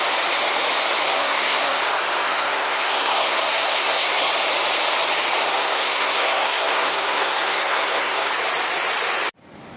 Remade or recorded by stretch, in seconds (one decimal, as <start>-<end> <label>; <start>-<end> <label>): 0.0-1.1 recorded; 1.1-1.8 remade; 1.8-2.3 recorded; 2.3-4.3 remade; 4.3-5.5 recorded; 5.5-8.3 remade; 8.3-9.8 recorded